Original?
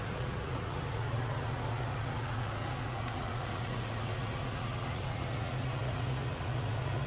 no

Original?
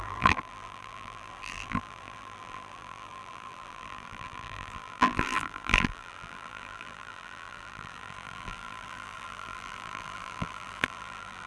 no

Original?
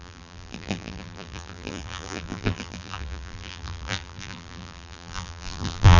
no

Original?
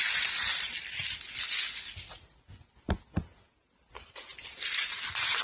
yes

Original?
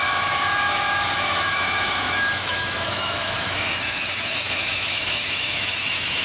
no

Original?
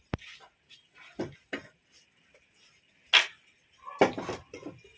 yes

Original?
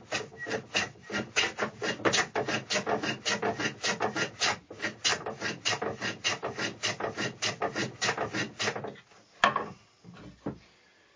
yes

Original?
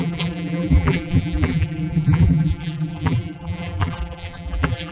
no